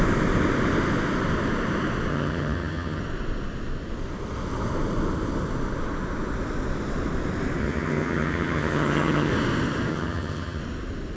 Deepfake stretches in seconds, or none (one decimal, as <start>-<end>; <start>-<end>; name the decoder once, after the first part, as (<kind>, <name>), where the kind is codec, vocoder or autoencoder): 2.1-3.0 (vocoder, HiFi-GAN); 7.6-9.3; 9.9-10.6